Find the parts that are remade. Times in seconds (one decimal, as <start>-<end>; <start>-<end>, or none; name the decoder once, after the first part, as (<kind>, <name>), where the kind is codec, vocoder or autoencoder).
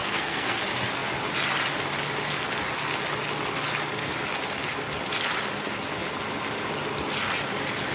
0.0-0.6 (codec, SNAC)